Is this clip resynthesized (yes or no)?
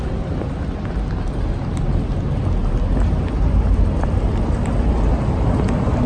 no